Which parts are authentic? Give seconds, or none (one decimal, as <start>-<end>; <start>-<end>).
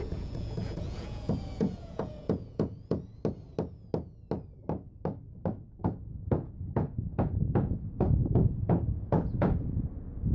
3.1-5.8